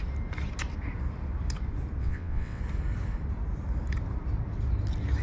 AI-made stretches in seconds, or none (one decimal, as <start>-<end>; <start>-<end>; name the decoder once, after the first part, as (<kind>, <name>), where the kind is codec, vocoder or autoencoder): 2.0-2.6 (vocoder, WaveNeXt)

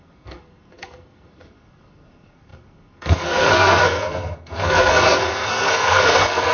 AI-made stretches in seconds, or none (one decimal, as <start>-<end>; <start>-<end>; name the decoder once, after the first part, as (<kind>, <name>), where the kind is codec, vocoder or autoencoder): 0.0-6.5 (codec, SNAC)

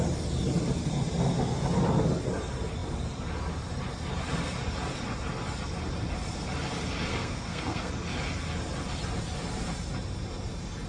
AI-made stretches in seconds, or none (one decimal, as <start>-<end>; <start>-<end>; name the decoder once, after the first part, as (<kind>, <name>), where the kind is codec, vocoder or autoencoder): 7.1-7.9 (codec, SNAC)

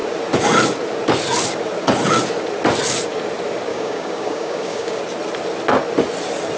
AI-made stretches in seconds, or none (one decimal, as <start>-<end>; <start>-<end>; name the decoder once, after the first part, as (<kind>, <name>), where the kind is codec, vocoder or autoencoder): 3.7-5.0 (codec, DAC)

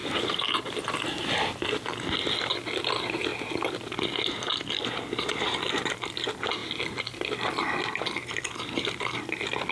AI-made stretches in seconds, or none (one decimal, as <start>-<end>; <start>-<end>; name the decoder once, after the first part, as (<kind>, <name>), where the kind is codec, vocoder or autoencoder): none